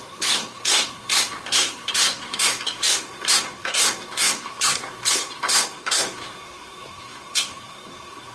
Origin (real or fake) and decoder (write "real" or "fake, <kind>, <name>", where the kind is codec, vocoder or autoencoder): fake, codec, SNAC